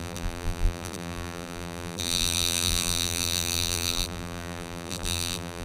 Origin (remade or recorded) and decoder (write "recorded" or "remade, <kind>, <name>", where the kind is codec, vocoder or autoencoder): remade, vocoder, BigVGAN v2